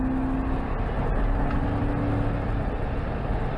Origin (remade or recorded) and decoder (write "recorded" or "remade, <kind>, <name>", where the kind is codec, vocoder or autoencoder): recorded